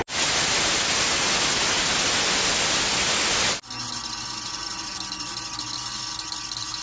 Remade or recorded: recorded